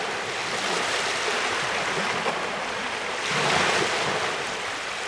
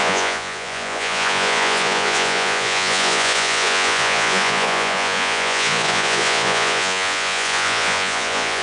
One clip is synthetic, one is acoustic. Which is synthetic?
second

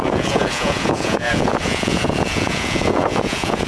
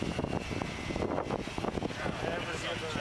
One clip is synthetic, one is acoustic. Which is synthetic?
first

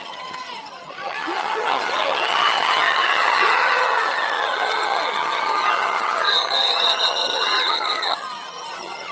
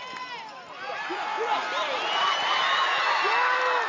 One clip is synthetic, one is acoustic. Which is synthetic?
first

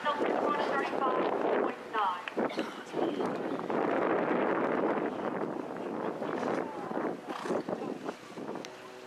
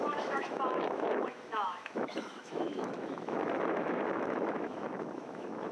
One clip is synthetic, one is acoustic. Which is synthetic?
second